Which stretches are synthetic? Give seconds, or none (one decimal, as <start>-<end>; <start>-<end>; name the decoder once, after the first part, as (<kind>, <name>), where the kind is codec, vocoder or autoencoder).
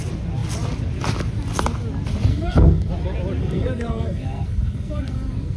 2.3-2.9 (codec, SNAC); 3.4-5.6